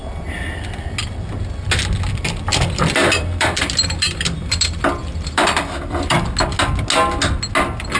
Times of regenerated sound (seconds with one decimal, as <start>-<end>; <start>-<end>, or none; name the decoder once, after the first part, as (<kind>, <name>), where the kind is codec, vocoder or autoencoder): 2.5-6.2 (vocoder, BigVGAN v2)